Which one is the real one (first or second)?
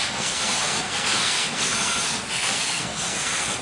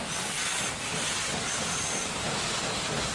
second